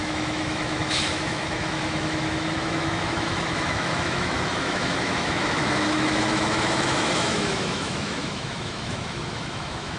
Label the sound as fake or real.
fake